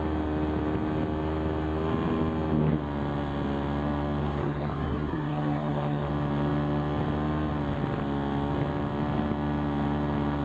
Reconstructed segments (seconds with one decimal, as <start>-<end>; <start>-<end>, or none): 4.2-6.1